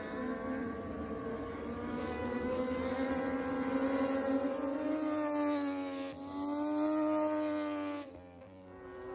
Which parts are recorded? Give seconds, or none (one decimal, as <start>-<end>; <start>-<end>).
0.0-1.3; 3.1-9.1